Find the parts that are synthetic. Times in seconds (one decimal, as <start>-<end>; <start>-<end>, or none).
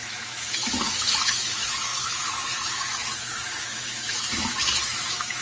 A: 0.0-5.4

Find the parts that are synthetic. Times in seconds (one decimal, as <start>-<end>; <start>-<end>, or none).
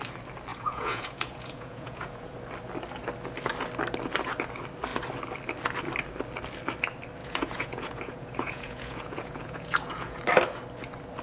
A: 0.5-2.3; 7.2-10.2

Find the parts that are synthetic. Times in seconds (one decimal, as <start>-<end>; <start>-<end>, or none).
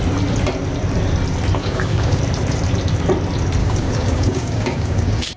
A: 1.6-2.2; 3.6-5.4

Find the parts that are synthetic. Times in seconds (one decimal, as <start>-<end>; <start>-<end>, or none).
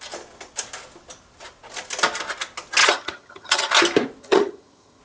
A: 2.8-3.7; 4.2-5.0